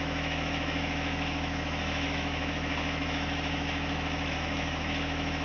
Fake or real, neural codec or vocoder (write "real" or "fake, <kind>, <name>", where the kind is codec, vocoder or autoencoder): fake, autoencoder, DAC-VAE